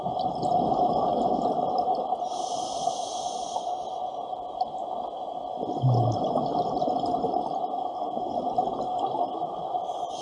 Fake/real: real